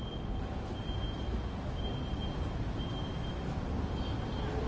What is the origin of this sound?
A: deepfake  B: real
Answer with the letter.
B